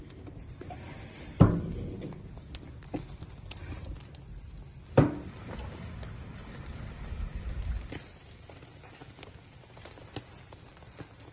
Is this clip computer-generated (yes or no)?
no